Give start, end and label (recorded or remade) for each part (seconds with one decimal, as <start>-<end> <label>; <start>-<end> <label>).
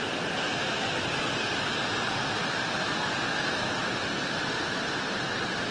0.0-5.7 recorded